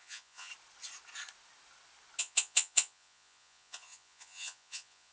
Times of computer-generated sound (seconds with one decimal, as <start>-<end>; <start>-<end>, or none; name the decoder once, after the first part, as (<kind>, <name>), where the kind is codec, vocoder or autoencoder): 0.0-0.5 (vocoder, Vocos); 2.2-5.1